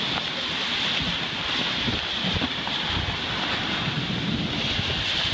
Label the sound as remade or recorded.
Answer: recorded